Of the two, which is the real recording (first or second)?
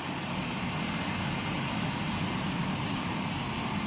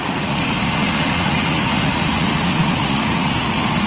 first